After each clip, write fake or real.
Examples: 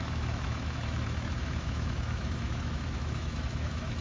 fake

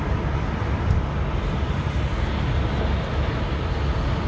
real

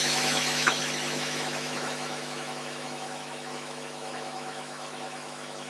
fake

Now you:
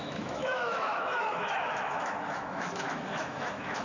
fake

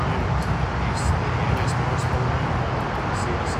real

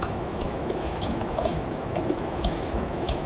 fake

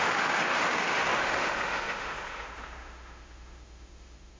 fake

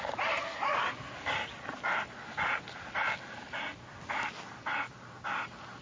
real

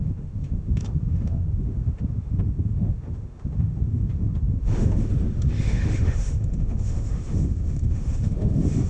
fake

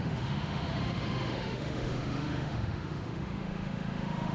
fake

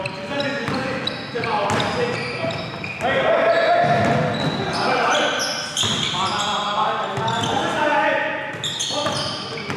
real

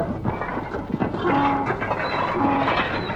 real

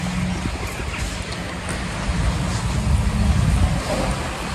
real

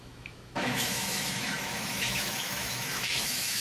fake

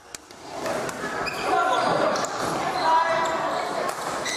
real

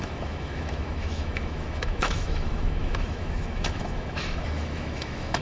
fake